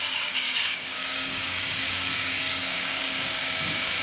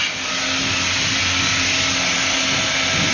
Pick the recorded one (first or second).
second